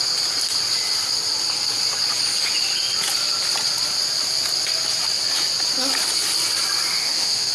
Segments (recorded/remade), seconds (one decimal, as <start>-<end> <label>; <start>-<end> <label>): 0.0-6.9 recorded; 6.9-7.5 remade